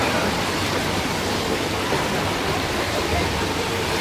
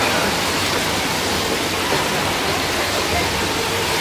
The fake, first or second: first